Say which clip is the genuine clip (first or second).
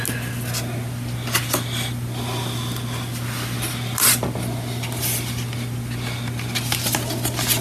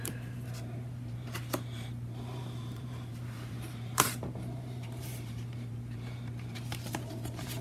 first